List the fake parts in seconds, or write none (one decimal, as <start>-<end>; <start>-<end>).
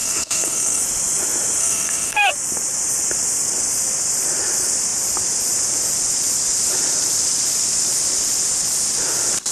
0.0-0.8; 1.6-2.3